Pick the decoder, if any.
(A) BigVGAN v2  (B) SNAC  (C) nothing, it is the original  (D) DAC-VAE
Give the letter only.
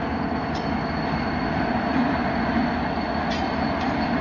C